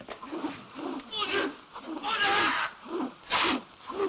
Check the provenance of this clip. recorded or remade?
remade